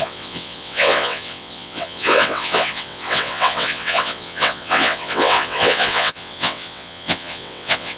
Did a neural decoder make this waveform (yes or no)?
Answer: yes